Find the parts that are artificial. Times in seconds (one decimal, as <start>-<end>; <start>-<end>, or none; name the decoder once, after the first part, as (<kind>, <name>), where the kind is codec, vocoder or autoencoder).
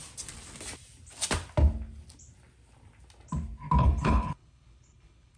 3.8-5.4 (codec, HILCodec)